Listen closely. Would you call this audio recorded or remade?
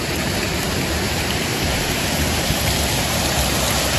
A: remade